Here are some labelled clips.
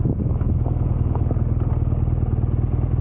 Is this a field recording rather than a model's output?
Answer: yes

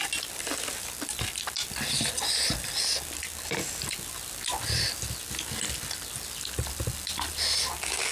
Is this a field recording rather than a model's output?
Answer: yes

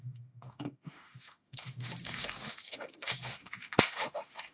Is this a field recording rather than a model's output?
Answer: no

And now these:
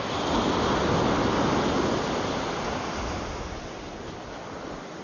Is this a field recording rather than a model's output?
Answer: yes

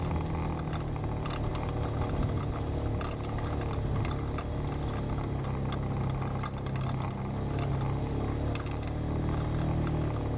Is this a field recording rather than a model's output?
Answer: yes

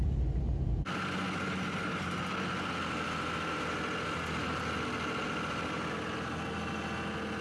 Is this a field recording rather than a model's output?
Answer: yes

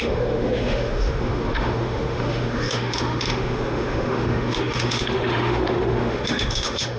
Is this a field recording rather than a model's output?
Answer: no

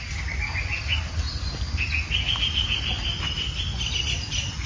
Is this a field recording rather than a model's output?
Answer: yes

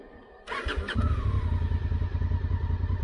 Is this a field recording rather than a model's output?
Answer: yes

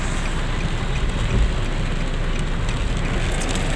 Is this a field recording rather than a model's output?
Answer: yes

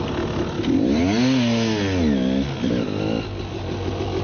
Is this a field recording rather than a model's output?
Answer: yes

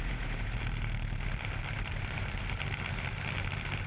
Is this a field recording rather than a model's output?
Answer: no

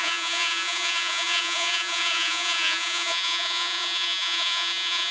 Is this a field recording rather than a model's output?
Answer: no